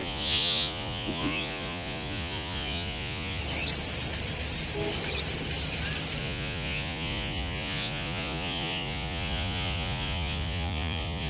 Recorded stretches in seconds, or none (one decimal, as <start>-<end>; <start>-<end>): 3.4-6.2